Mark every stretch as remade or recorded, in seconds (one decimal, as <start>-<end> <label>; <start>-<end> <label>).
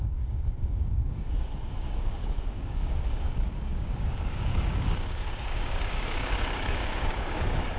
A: 0.0-7.8 remade